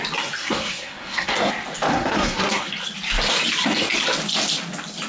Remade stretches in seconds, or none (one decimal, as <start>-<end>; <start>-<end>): 0.4-1.5; 1.9-2.7